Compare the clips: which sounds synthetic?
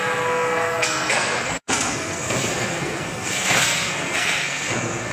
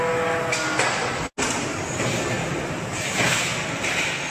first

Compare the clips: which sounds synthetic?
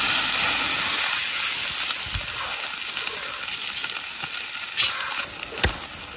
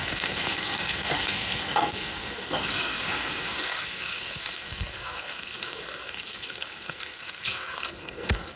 second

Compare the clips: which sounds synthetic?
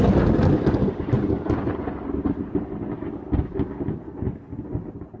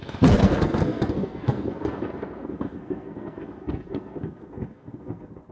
second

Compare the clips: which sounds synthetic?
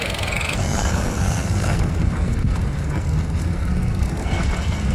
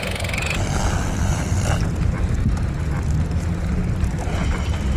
first